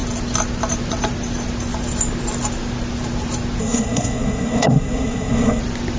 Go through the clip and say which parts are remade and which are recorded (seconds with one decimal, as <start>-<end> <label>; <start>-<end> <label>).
0.0-3.6 recorded; 3.6-5.6 remade; 5.6-6.0 recorded